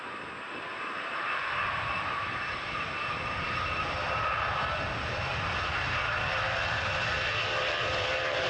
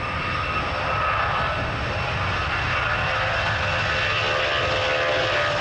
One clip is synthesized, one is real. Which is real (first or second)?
second